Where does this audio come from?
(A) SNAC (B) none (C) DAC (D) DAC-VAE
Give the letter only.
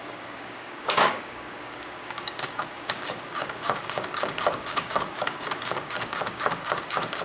C